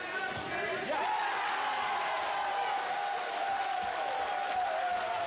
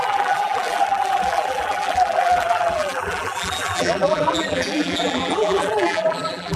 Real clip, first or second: first